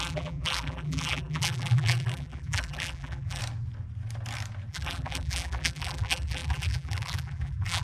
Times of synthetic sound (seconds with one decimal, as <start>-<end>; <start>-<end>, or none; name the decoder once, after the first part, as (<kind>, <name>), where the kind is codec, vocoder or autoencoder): 0.0-3.4 (vocoder, BigVGAN v2); 4.7-7.8

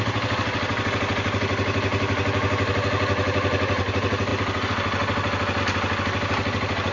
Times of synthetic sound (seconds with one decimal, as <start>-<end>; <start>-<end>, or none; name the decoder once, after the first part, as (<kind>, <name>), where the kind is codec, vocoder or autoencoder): none